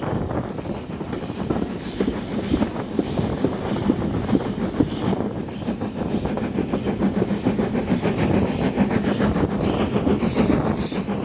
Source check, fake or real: real